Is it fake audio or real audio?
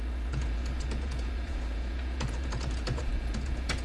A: fake